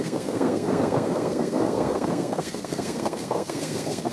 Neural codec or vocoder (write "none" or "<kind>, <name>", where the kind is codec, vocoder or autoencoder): codec, SNAC